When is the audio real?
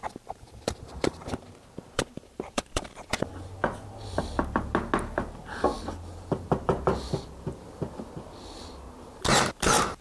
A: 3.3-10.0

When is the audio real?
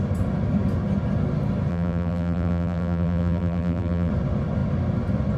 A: 0.0-1.7; 4.1-5.4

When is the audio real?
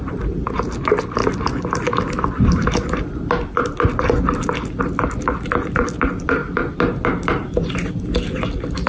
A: 0.0-8.9